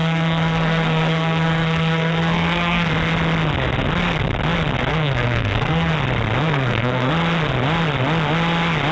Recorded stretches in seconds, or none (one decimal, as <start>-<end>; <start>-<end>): 2.9-4.9; 5.9-6.4; 7.1-8.9